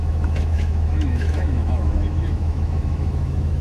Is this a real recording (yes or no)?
no